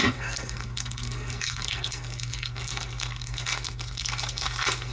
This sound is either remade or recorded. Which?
remade